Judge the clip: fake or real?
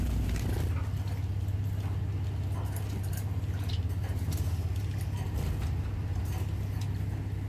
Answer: real